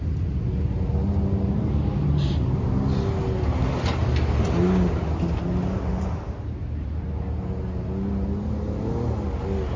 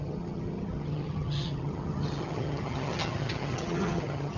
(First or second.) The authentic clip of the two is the first